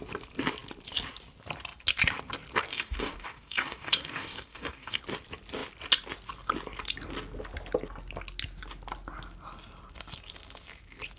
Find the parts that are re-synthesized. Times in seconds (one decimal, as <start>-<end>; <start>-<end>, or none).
2.7-5.0